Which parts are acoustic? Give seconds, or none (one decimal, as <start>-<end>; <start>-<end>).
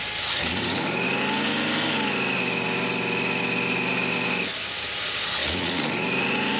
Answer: 0.0-5.4; 5.9-6.6